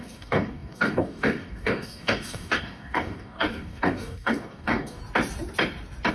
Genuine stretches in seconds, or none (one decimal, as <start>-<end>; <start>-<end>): 5.0-6.1